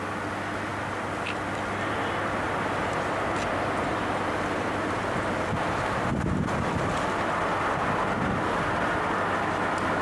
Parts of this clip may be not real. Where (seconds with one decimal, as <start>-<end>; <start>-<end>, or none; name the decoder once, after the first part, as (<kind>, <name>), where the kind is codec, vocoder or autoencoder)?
none